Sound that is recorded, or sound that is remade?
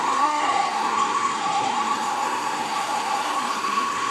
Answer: remade